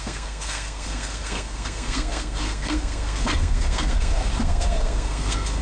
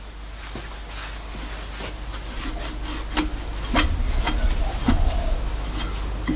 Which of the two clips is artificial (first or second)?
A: first